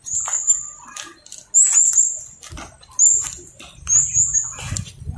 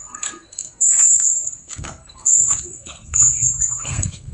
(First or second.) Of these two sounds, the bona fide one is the first